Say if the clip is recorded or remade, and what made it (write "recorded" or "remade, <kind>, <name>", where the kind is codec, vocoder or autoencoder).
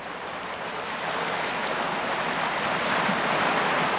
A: recorded